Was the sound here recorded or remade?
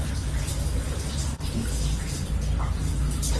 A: recorded